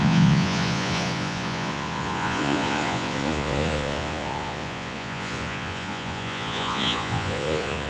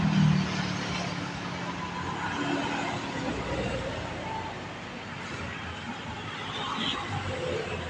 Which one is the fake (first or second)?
first